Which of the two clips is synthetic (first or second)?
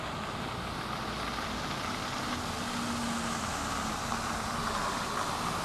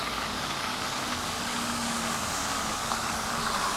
second